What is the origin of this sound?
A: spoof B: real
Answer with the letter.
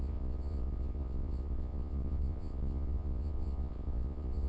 A